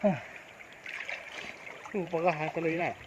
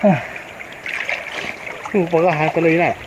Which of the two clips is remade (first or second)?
first